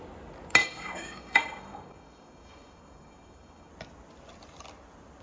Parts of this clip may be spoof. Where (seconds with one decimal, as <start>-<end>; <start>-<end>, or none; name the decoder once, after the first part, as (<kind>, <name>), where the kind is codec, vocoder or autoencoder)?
0.6-3.7 (codec, DAC)